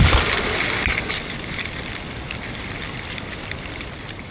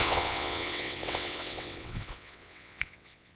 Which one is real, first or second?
first